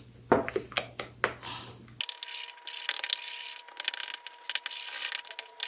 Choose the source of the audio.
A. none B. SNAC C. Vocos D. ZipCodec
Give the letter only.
A